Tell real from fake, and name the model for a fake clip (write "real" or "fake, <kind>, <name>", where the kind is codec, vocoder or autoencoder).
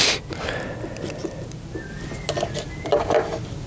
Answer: real